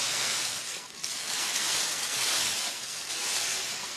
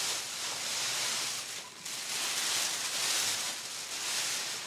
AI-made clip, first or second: first